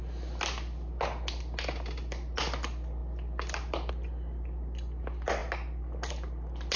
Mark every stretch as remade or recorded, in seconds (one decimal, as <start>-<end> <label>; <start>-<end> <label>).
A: 0.0-6.8 recorded